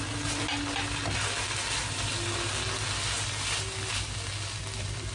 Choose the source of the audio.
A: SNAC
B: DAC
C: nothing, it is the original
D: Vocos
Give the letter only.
C